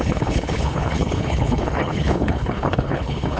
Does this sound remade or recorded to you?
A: remade